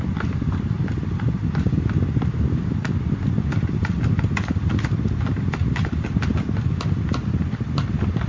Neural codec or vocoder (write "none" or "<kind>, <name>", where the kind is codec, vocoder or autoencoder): none